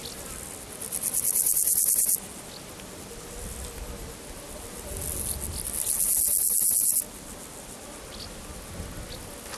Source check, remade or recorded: recorded